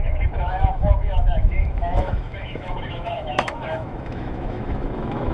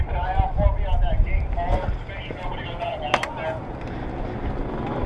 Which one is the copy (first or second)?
first